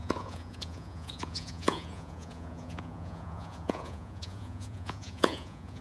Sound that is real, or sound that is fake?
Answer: fake